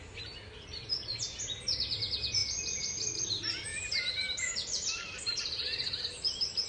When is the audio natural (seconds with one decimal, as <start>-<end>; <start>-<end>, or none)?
0.0-3.7; 6.0-6.7

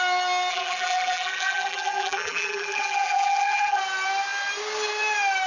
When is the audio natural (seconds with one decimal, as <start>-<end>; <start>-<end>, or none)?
0.0-0.5; 3.8-5.5

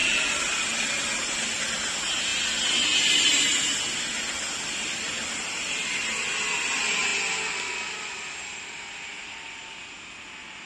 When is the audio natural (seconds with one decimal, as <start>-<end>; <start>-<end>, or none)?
0.9-10.7

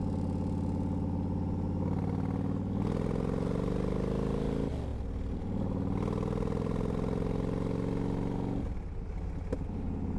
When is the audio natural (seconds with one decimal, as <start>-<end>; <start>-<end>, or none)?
0.0-10.2

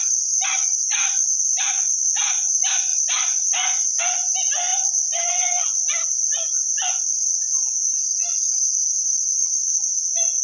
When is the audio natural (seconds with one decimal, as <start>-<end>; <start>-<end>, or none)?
0.0-2.9; 4.0-4.7; 6.2-10.4

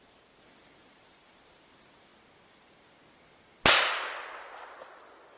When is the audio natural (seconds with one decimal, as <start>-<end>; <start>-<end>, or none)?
2.1-5.4